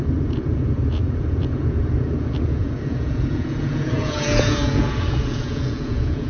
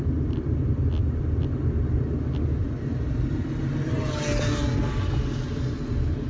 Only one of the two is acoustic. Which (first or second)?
second